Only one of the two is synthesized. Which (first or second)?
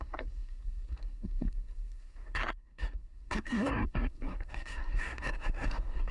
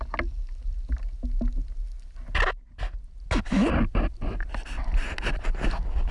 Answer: first